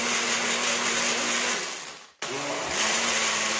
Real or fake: real